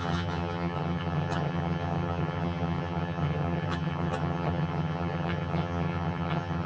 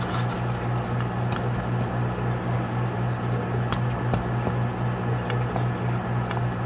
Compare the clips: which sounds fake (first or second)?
first